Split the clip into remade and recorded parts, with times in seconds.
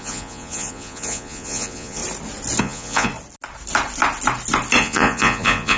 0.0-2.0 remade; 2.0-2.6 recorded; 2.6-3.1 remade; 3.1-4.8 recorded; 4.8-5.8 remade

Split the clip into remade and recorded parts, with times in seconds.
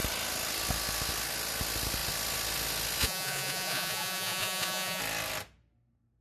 0.0-3.0 recorded; 3.0-5.0 remade; 5.0-6.2 recorded